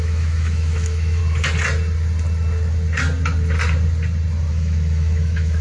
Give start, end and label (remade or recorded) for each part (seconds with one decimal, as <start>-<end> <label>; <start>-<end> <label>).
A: 0.0-1.2 remade; 1.2-4.5 recorded; 4.5-5.6 remade